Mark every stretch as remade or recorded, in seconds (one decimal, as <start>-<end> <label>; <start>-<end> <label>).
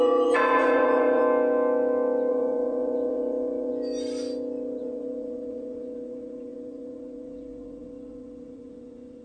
0.0-1.2 remade; 1.2-2.3 recorded; 2.3-3.7 remade; 3.7-4.8 recorded; 4.8-9.2 remade